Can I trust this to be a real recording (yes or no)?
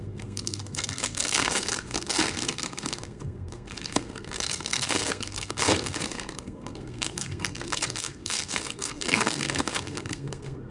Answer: no